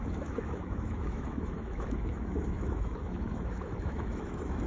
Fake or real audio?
fake